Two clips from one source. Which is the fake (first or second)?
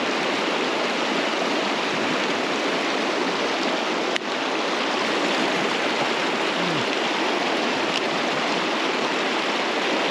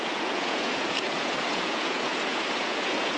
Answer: second